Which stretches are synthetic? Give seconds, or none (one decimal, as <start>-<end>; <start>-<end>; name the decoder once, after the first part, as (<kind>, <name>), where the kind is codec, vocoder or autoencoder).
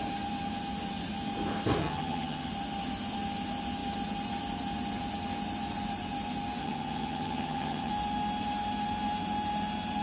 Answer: 1.8-2.5 (vocoder, HiFi-GAN); 6.6-7.9